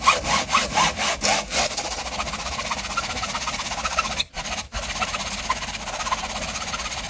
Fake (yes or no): no